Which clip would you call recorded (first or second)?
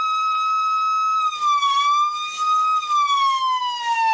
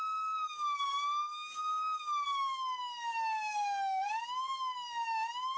first